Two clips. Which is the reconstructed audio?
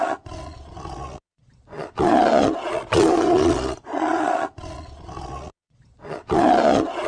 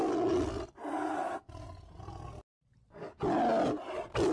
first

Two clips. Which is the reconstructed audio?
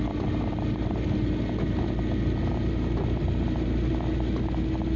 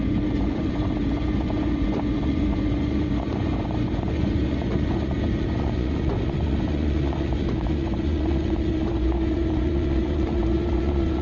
second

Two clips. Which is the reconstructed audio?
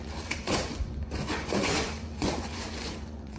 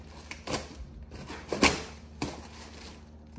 first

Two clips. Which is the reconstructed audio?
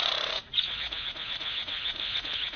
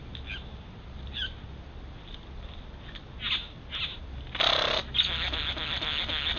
first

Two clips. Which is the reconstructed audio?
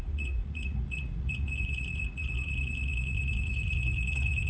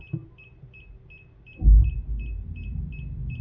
first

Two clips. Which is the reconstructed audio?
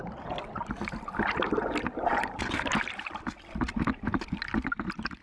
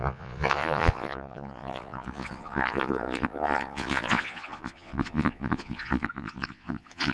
second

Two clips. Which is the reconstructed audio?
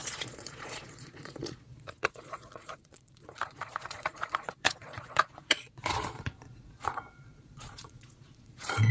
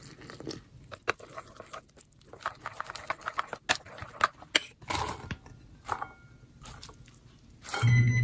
first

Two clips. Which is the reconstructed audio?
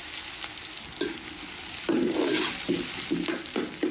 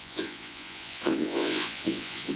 second